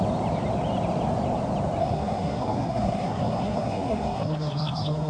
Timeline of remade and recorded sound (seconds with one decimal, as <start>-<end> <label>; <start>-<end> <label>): 0.0-1.8 recorded; 1.8-5.1 remade